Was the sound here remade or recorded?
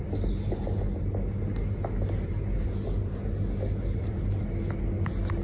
recorded